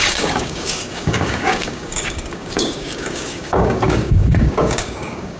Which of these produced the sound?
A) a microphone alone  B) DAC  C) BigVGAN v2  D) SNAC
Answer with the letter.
B